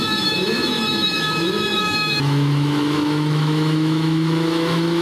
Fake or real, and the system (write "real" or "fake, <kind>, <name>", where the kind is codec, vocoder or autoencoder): fake, autoencoder, DAC-VAE